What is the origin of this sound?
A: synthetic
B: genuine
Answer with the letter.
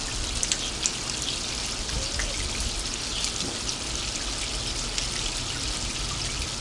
B